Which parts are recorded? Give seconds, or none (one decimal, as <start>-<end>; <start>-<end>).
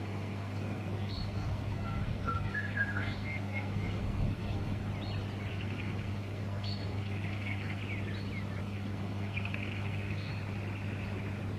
4.8-5.5; 7.8-8.6; 10.3-11.6